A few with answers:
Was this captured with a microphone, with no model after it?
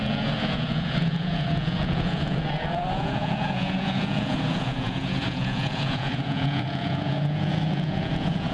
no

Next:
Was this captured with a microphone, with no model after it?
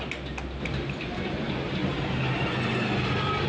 yes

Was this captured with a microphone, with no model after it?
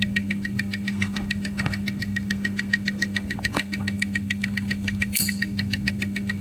no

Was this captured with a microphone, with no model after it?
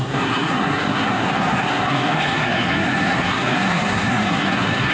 no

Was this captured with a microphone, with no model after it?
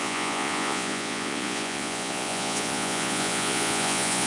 no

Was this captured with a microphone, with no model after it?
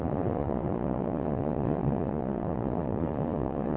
no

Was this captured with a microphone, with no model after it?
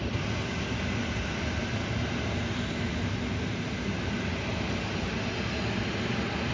yes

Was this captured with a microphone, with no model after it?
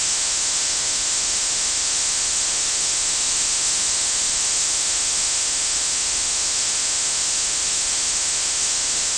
no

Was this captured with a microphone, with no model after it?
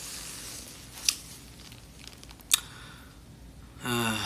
yes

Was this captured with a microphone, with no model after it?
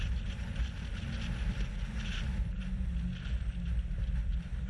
yes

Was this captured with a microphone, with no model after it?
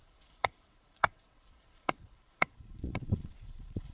no